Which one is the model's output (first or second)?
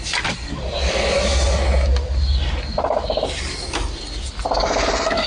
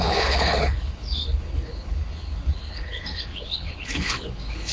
second